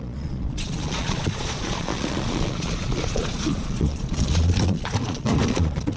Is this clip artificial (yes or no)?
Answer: yes